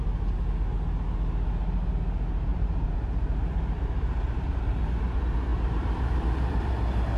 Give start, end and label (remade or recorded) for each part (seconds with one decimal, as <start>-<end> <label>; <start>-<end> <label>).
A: 0.0-2.5 recorded; 2.5-4.5 remade; 4.5-5.5 recorded; 5.5-6.7 remade; 6.7-7.2 recorded